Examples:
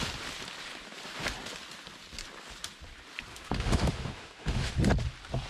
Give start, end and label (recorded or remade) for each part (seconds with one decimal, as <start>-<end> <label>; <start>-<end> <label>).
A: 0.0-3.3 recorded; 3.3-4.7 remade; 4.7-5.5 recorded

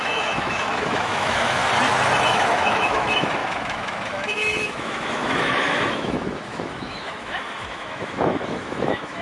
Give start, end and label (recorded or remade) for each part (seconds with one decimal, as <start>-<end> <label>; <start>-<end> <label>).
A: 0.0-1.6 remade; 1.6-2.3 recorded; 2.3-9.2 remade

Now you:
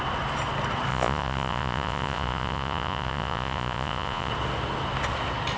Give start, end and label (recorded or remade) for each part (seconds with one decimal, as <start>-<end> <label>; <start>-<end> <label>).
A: 0.0-0.9 recorded; 0.9-4.3 remade; 4.3-5.6 recorded

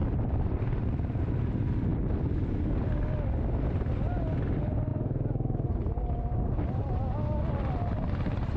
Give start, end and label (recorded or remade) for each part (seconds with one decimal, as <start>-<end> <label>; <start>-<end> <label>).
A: 0.0-1.2 remade; 1.2-8.6 recorded

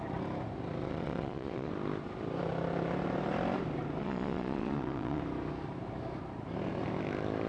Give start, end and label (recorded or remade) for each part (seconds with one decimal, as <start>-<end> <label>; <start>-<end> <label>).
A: 0.0-0.8 recorded; 0.8-1.7 remade; 1.7-4.0 recorded; 4.0-5.2 remade; 5.2-7.5 recorded

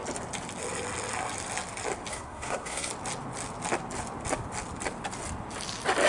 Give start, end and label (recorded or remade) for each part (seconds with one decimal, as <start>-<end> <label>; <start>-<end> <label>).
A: 0.0-2.1 recorded; 2.1-2.9 remade; 2.9-6.1 recorded

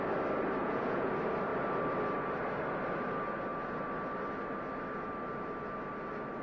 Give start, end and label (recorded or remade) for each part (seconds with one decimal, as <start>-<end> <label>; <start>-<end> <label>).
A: 0.0-0.6 recorded; 0.6-1.1 remade; 1.1-6.4 recorded

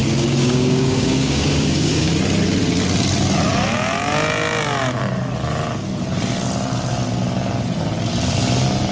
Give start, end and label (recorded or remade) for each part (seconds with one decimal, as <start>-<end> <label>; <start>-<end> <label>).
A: 0.0-2.1 remade; 2.1-8.9 recorded